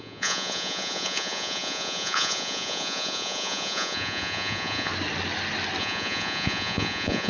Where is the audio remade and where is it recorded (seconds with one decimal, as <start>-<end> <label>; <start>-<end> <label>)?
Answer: 0.0-4.9 remade; 4.9-5.8 recorded; 5.8-7.3 remade